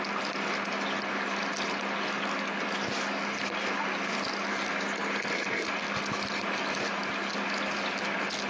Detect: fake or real real